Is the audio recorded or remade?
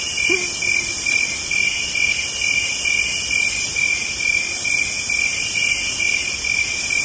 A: recorded